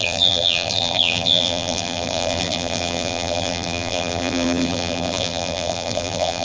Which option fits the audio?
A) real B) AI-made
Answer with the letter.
B